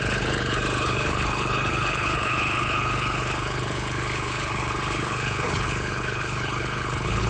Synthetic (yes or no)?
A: yes